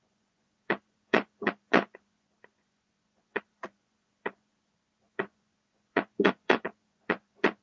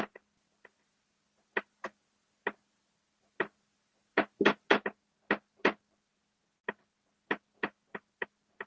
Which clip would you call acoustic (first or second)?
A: second